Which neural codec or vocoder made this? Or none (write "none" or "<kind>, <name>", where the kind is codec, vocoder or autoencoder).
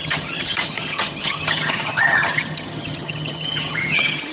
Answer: vocoder, HiFi-GAN